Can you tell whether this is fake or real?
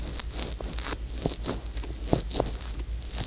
real